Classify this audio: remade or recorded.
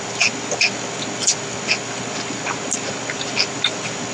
recorded